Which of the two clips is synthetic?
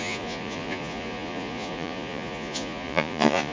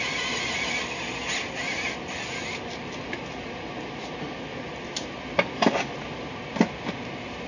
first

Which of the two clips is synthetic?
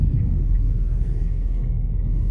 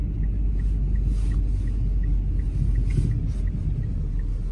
first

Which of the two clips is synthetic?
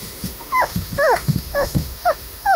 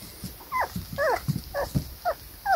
first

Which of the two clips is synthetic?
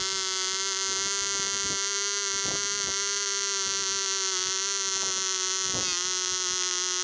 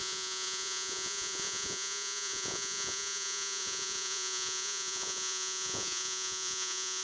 second